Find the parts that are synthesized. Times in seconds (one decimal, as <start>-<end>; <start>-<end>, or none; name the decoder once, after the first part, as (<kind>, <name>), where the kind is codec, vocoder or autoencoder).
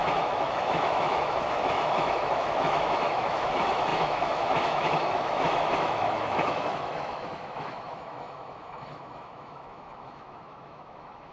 0.0-11.3 (autoencoder, DAC-VAE)